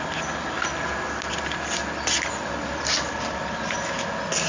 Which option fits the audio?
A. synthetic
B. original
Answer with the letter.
B